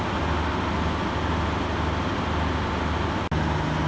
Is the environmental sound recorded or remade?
recorded